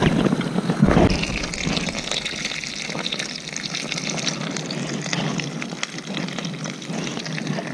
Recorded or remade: recorded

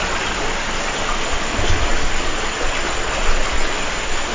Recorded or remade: recorded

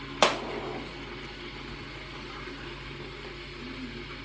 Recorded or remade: recorded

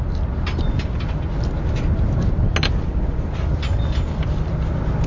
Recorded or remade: recorded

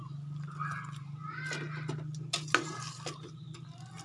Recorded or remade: recorded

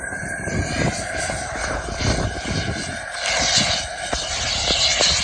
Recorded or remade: recorded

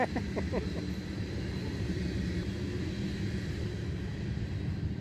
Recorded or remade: recorded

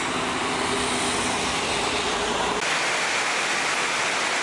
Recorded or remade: recorded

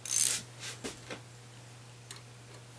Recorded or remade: recorded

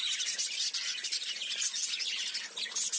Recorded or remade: recorded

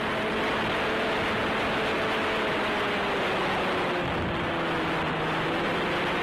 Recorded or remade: recorded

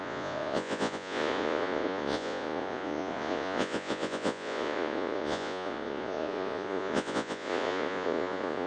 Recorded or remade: remade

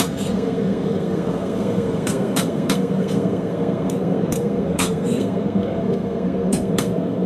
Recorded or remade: remade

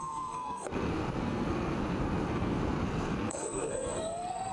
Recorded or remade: remade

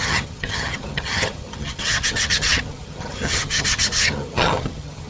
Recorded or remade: remade